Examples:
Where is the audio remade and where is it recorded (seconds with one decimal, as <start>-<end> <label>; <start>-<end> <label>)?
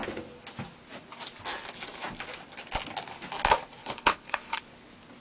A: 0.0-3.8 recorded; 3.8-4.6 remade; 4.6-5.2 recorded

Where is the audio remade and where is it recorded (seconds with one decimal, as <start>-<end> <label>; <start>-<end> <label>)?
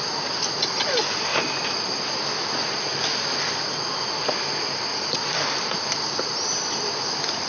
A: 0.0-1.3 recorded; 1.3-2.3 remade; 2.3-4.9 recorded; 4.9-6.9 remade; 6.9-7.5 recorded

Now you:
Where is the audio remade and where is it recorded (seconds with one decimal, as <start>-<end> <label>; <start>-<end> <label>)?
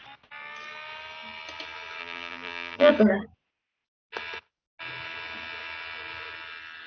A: 0.0-2.0 recorded; 2.0-2.9 remade; 2.9-6.9 recorded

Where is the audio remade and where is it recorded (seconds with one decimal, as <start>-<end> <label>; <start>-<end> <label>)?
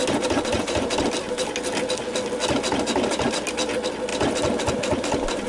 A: 0.0-5.5 recorded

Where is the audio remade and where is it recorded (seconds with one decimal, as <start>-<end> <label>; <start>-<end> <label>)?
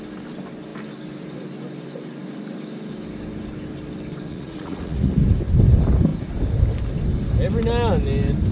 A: 0.0-4.3 recorded; 4.3-5.1 remade; 5.1-8.5 recorded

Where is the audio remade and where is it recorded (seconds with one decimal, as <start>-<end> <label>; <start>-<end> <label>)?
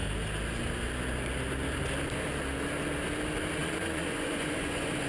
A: 0.0-3.6 recorded; 3.6-5.1 remade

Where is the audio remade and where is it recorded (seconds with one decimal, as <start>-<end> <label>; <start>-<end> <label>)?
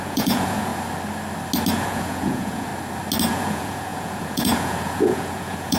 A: 0.0-0.7 remade; 0.7-1.7 recorded; 1.7-2.7 remade; 2.7-3.3 recorded; 3.3-5.8 remade